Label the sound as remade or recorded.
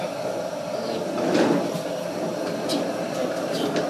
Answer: recorded